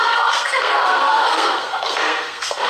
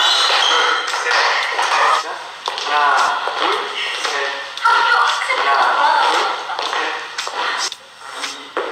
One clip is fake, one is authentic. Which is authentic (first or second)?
second